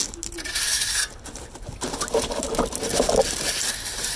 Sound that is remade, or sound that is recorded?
recorded